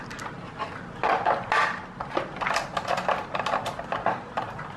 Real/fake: real